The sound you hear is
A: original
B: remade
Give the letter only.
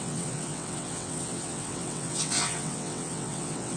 B